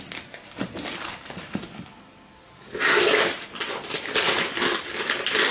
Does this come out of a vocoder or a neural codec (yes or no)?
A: no